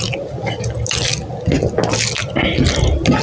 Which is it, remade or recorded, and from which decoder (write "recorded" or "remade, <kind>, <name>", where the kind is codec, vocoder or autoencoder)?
recorded